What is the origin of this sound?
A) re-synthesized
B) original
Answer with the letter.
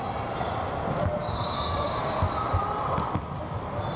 B